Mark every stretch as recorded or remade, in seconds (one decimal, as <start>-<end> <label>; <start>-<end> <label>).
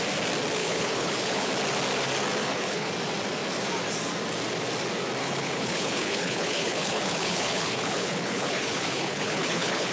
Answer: 0.0-0.6 recorded; 0.6-1.5 remade; 1.5-2.4 recorded; 2.4-2.9 remade; 2.9-5.2 recorded; 5.2-9.9 remade